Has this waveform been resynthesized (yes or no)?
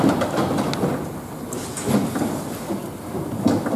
no